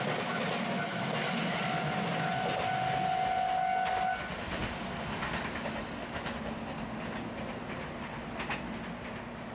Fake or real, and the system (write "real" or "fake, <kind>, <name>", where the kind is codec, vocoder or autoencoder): real